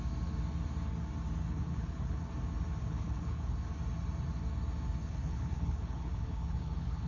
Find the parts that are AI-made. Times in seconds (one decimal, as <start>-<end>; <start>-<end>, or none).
1.4-2.3; 2.8-3.7; 5.0-7.1

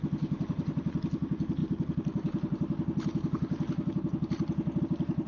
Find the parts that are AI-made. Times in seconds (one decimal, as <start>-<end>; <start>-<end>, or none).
none

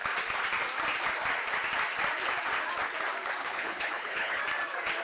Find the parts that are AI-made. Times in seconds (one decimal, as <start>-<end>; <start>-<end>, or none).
3.4-4.4

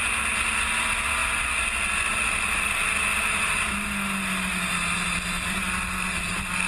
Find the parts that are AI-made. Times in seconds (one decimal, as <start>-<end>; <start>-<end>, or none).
none

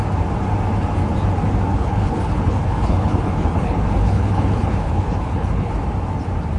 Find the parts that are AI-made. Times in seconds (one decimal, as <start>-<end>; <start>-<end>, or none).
1.7-5.7